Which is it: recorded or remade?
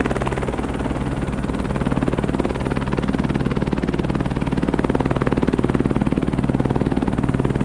recorded